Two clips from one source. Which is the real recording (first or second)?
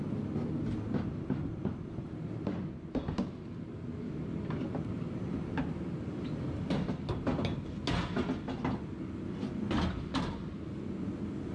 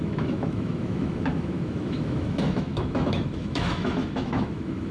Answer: first